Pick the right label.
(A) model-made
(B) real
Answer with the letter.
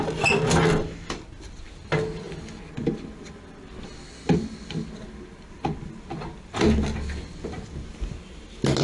B